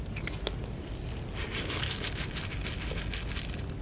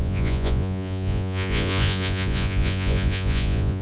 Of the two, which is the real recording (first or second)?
first